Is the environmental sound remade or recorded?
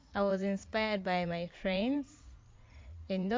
remade